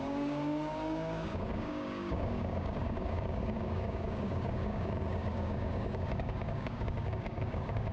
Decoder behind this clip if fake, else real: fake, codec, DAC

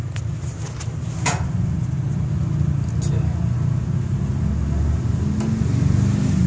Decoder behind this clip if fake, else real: real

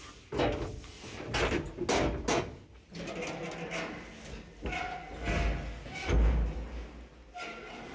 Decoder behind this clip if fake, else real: real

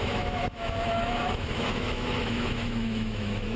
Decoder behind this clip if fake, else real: fake, autoencoder, DAC-VAE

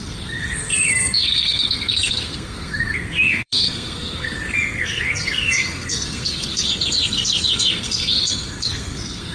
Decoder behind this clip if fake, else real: fake, codec, SNAC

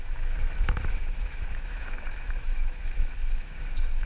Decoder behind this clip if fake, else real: fake, autoencoder, DAC-VAE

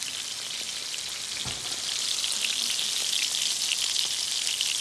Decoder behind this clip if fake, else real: real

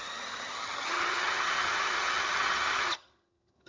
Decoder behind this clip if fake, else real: fake, vocoder, HiFi-GAN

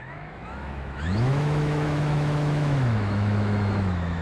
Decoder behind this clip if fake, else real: fake, autoencoder, DAC-VAE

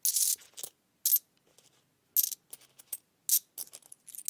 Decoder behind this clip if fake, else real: real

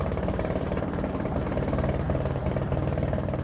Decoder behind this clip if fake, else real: fake, vocoder, BigVGAN v2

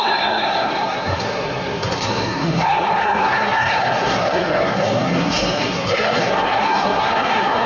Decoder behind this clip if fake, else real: fake, codec, SNAC